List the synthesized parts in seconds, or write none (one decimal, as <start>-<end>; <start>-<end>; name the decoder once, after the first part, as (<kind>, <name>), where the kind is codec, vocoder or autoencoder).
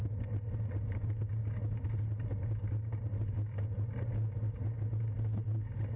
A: none